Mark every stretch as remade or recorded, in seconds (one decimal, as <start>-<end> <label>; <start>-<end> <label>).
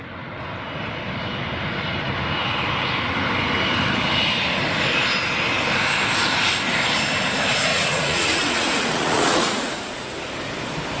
0.0-7.7 recorded; 7.7-10.1 remade; 10.1-11.0 recorded